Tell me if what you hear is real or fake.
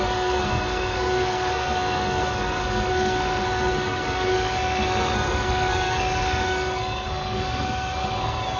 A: fake